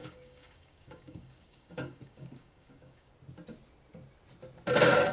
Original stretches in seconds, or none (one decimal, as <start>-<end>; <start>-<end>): 3.1-5.1